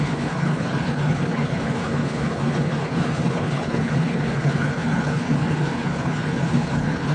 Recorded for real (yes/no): no